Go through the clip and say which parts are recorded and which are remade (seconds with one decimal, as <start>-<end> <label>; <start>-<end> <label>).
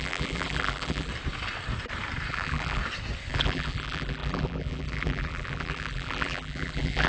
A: 0.0-1.1 remade; 1.1-2.3 recorded; 2.3-2.8 remade; 2.8-3.3 recorded; 3.3-7.1 remade